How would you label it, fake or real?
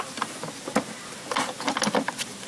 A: real